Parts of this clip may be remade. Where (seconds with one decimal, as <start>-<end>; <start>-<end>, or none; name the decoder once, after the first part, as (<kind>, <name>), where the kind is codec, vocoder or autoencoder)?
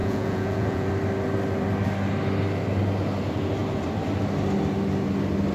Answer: 0.0-0.9 (vocoder, Vocos)